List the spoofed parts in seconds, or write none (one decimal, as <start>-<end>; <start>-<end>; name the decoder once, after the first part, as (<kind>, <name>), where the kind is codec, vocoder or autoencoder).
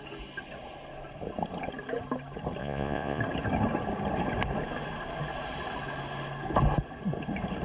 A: 2.6-3.2 (vocoder, Vocos)